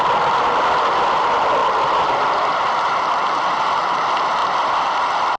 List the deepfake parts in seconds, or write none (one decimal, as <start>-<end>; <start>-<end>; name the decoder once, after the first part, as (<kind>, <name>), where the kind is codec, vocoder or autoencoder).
none